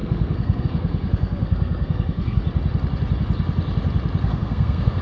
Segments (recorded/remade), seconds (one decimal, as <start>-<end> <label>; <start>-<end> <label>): 0.0-2.4 remade; 2.4-4.2 recorded; 4.2-5.0 remade